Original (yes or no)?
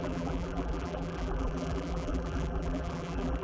no